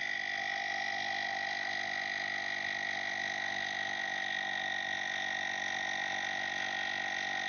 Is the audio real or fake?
real